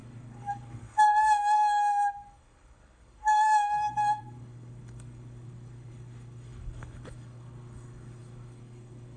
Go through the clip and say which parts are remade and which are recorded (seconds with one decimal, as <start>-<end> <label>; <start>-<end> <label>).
0.0-9.2 remade